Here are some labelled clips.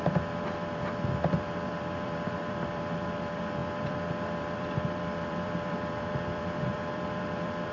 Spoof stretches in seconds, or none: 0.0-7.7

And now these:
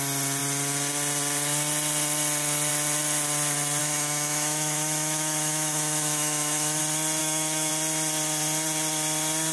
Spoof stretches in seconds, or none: 3.8-6.8; 7.2-7.7

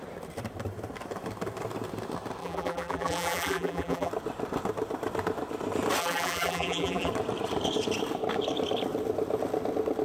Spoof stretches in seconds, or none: 2.4-4.1; 6.0-7.1

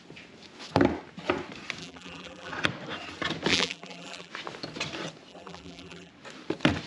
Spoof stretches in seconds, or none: 1.8-2.5; 3.5-4.3; 5.3-6.1

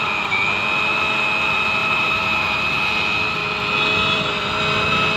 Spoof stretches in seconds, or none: 1.8-2.6

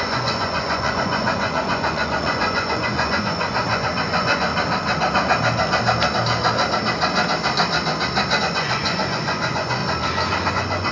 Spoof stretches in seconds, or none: 0.0-4.5; 8.4-9.8; 10.5-10.9

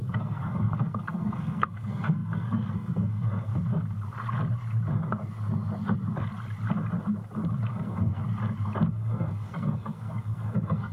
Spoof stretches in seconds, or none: 0.0-3.5; 7.7-8.2; 8.9-10.9

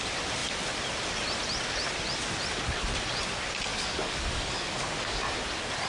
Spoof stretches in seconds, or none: 3.7-5.4